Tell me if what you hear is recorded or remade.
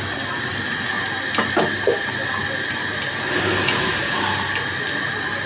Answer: recorded